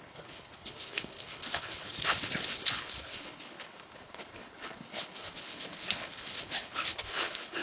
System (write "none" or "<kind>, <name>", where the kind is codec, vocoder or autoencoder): codec, HILCodec